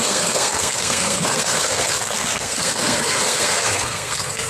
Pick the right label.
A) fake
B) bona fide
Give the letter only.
A